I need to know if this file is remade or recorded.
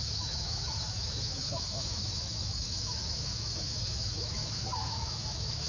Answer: remade